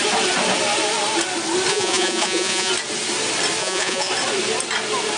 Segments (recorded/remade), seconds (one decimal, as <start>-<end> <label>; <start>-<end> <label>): 0.0-1.7 recorded; 1.7-2.7 remade; 2.7-3.6 recorded; 3.6-4.1 remade; 4.1-5.2 recorded